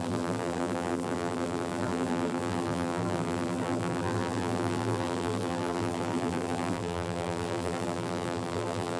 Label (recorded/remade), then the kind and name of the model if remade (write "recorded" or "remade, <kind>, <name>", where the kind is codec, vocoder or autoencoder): remade, vocoder, BigVGAN v2